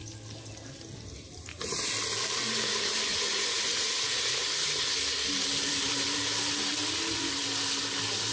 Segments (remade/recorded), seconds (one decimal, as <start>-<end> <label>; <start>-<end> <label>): 0.0-3.1 recorded; 3.1-3.9 remade; 3.9-8.3 recorded